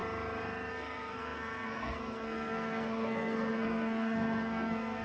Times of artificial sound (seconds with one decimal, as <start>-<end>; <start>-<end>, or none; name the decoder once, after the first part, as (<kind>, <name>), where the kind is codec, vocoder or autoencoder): 0.7-5.0 (codec, SNAC)